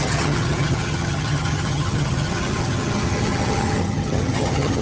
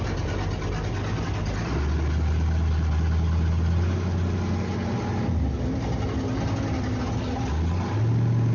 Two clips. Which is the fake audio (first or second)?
first